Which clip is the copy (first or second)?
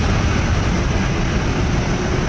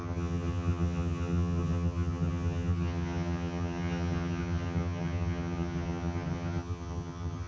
second